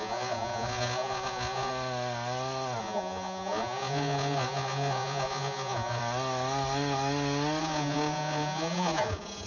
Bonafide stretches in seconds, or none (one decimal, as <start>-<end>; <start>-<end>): 1.7-2.8; 6.0-7.6